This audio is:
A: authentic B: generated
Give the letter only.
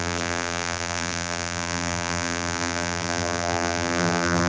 B